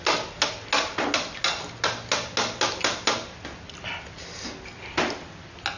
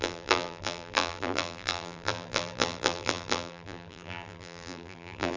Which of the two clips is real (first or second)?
first